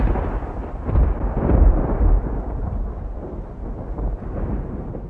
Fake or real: fake